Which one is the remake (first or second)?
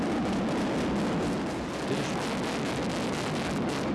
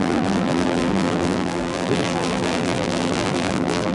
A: second